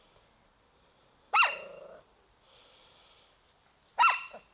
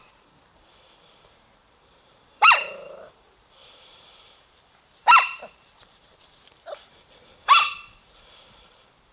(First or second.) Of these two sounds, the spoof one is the second